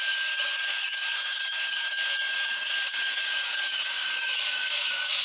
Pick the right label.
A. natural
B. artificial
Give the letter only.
B